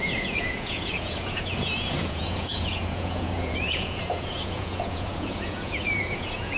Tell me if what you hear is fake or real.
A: fake